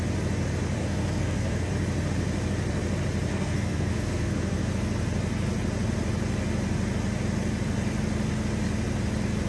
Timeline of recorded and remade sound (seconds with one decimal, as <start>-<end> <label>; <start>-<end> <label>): 0.0-0.8 recorded; 0.8-1.7 remade; 1.7-3.3 recorded; 3.3-4.7 remade; 4.7-9.5 recorded